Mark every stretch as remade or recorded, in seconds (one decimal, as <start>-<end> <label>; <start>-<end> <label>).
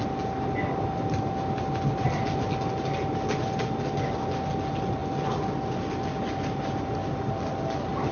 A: 0.0-8.1 recorded